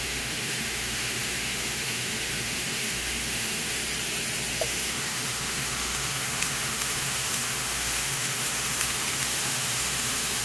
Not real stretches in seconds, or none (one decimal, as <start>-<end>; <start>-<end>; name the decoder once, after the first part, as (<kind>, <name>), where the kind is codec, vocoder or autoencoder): 0.0-3.8 (autoencoder, DAC-VAE); 4.5-10.4